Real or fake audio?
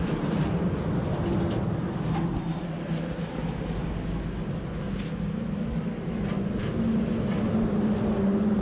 real